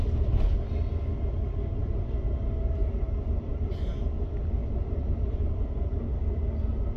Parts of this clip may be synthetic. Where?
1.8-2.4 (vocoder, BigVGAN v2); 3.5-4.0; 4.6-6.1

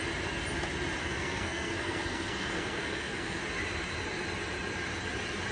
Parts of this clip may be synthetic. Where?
1.0-3.4 (codec, SNAC)

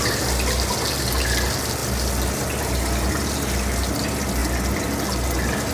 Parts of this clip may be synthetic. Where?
none

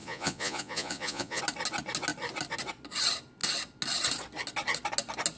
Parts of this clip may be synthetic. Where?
0.0-1.4 (vocoder, Vocos)

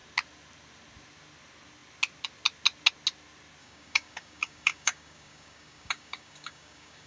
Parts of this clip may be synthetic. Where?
3.6-7.1 (codec, DAC)